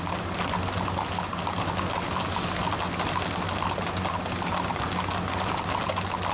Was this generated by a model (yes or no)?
no